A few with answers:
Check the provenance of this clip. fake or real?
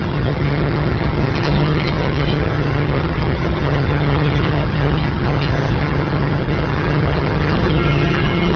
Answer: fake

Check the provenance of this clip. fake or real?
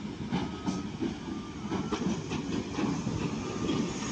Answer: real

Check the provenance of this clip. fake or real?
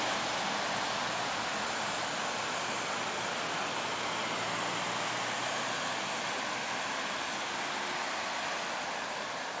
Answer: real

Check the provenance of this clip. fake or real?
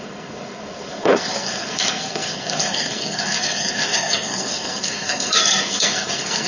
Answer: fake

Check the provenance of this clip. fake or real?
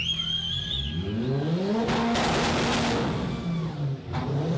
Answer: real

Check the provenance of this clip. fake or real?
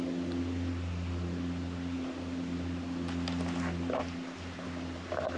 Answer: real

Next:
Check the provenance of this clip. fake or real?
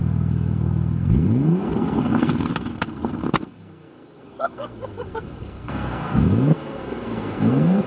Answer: fake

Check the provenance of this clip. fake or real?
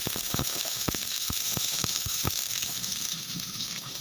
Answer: fake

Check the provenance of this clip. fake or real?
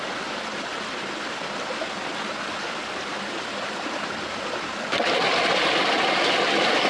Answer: real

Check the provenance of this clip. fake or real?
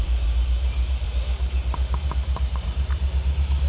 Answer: fake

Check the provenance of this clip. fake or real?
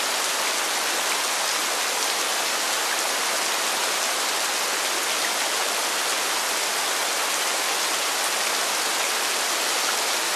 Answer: real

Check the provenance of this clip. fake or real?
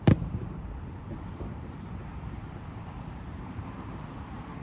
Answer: fake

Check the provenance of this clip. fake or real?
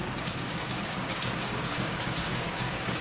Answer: fake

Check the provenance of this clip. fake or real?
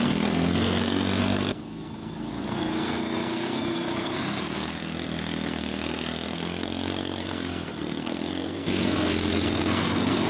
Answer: fake